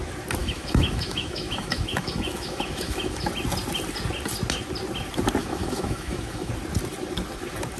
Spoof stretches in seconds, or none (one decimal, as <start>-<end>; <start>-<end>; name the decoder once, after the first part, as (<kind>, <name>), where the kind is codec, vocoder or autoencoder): 0.4-3.3 (autoencoder, DAC-VAE); 5.4-6.5